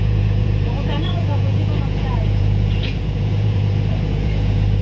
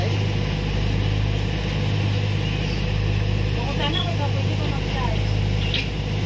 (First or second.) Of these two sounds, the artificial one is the first